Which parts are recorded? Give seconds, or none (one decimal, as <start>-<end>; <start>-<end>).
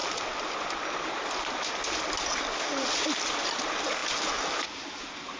0.0-5.4